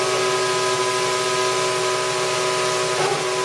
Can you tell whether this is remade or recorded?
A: recorded